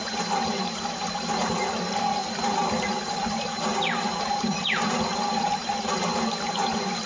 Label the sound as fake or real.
real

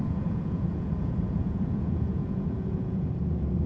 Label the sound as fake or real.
fake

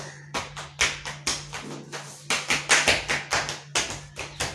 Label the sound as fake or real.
real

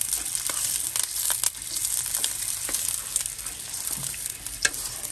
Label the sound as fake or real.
real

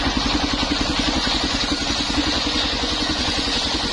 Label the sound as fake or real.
fake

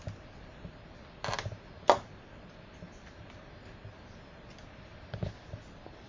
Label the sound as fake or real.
real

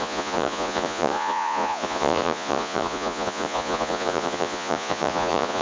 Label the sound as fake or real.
fake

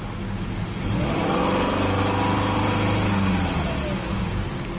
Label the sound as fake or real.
real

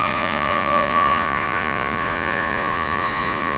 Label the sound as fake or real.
fake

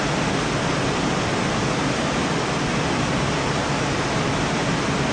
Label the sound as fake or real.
real